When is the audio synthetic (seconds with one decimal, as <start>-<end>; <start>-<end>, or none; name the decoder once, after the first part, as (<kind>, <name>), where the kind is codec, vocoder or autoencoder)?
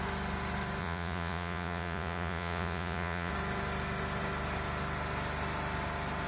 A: 0.8-3.3 (vocoder, Vocos)